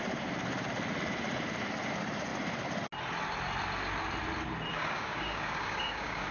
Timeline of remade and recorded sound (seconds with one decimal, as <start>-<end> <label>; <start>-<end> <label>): 0.0-4.7 recorded; 4.7-6.3 remade